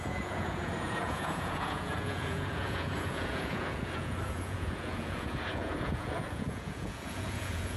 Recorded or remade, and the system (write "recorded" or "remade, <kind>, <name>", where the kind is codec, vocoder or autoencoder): remade, vocoder, Vocos